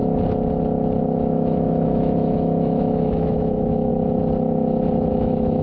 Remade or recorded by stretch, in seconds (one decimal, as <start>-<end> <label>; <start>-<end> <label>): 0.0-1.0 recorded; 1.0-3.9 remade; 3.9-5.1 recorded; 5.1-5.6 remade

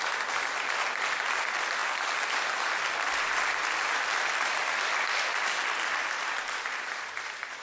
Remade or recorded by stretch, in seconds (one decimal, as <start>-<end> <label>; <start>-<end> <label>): 0.0-7.6 recorded

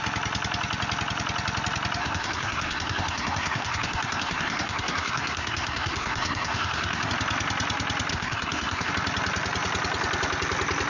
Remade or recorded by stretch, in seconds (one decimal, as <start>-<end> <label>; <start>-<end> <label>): 0.0-2.0 recorded; 2.0-7.1 remade; 7.1-8.1 recorded; 8.1-8.9 remade; 8.9-10.9 recorded

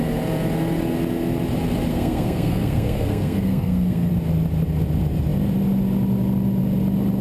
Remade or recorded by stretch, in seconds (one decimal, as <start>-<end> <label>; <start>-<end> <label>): 0.0-1.9 recorded; 1.9-4.1 remade; 4.1-7.2 recorded

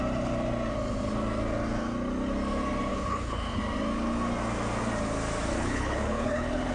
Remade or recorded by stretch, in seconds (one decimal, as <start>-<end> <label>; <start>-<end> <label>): 0.0-2.9 recorded; 2.9-3.6 remade; 3.6-5.5 recorded; 5.5-6.7 remade

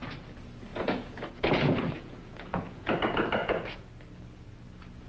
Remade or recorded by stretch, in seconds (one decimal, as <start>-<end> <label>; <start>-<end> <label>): 0.0-0.7 recorded; 0.7-2.9 remade; 2.9-3.4 recorded; 3.4-3.9 remade; 3.9-5.1 recorded